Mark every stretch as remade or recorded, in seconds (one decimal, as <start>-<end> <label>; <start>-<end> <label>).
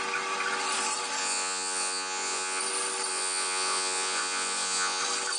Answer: 0.0-1.2 recorded; 1.2-2.6 remade; 2.6-3.1 recorded; 3.1-5.0 remade; 5.0-5.4 recorded